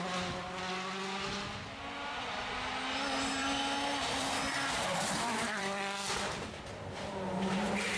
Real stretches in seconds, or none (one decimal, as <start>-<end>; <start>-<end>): 0.0-4.9; 6.6-8.0